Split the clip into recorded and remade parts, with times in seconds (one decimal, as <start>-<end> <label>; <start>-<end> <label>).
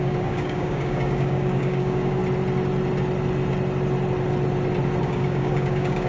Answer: 0.0-2.2 remade; 2.2-5.0 recorded; 5.0-6.1 remade